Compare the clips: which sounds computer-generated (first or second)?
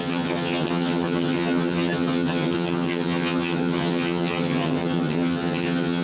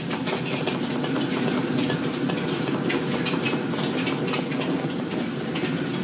first